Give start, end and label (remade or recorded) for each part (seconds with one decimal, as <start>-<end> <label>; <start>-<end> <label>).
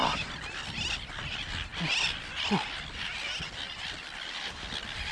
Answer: 0.0-5.1 recorded